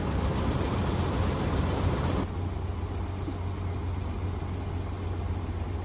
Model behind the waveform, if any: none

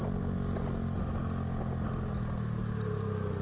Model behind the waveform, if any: none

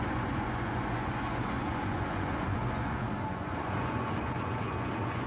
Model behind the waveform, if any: vocoder, Vocos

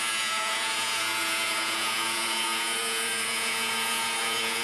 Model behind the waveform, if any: vocoder, Vocos